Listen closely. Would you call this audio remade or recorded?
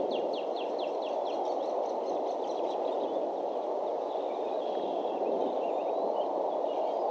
recorded